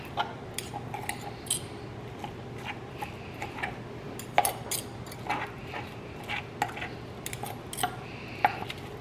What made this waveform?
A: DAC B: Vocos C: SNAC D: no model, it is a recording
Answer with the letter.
D